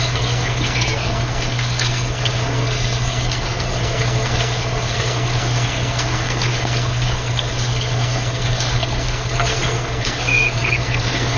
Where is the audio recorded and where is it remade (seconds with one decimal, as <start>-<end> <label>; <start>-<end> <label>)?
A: 0.0-11.4 remade